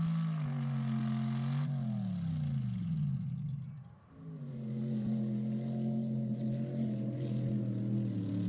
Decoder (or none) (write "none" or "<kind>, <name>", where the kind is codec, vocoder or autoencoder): none